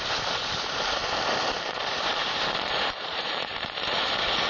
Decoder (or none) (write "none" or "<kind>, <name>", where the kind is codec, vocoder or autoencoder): vocoder, BigVGAN v2